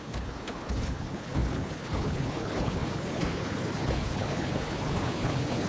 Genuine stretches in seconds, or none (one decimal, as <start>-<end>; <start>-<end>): none